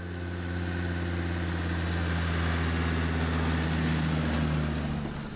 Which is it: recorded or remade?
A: recorded